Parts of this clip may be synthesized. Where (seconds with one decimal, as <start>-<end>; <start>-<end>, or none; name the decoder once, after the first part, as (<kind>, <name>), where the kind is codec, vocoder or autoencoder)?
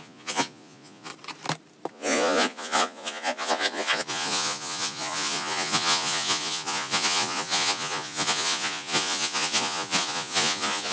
0.0-1.1 (vocoder, Vocos); 1.9-10.9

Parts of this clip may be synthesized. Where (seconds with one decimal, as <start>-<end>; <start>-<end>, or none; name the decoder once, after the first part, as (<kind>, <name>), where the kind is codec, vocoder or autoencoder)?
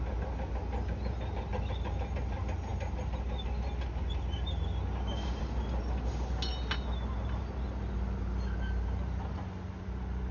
none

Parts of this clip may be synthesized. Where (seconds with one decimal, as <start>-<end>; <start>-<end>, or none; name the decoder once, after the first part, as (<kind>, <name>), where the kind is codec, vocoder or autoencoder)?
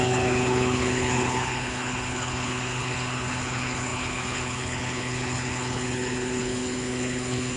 0.0-7.6 (codec, HILCodec)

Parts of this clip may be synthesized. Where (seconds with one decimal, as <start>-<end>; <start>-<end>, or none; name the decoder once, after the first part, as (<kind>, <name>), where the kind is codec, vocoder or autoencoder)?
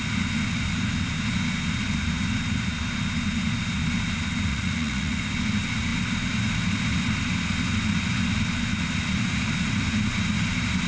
4.5-5.2 (vocoder, Vocos)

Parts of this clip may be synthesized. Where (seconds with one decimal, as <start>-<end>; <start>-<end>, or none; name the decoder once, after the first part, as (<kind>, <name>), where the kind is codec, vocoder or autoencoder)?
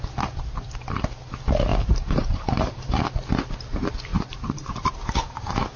1.7-2.8 (vocoder, BigVGAN v2); 4.1-4.9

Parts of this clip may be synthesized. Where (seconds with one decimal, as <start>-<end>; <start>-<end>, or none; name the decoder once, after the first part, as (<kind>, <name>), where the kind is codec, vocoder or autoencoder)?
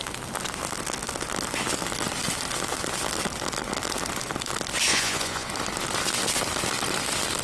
4.9-5.5 (vocoder, Vocos)